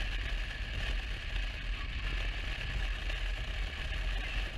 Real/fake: real